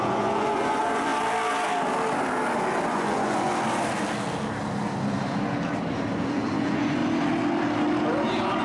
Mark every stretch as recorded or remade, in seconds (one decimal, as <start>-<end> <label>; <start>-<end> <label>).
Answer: 0.0-1.1 remade; 1.1-2.9 recorded; 2.9-3.5 remade; 3.5-6.2 recorded; 6.2-7.0 remade; 7.0-8.6 recorded